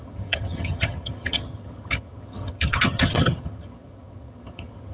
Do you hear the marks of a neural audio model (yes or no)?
yes